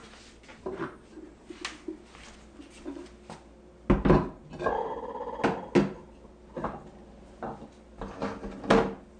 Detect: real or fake real